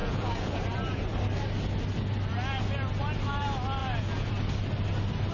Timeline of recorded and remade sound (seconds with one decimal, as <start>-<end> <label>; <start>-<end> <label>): 0.0-0.6 remade; 0.6-3.8 recorded; 3.8-4.3 remade; 4.3-5.3 recorded